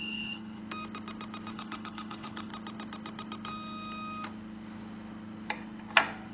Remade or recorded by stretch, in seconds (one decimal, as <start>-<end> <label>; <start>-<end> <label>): 0.0-0.6 remade; 0.6-1.5 recorded; 1.5-2.5 remade; 2.5-6.3 recorded